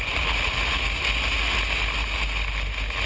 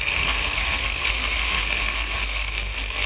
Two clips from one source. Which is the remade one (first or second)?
second